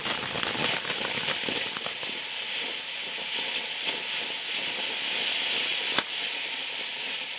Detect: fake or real real